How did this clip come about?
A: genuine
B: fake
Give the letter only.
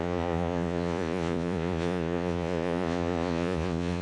B